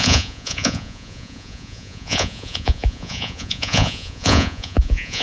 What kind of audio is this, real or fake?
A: fake